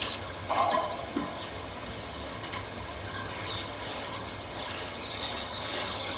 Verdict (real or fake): fake